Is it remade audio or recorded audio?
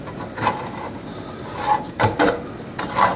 recorded